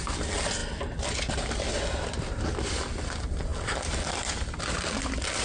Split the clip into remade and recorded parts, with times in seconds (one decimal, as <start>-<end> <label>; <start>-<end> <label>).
0.0-5.4 recorded